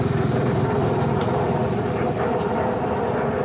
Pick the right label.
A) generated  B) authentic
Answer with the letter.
B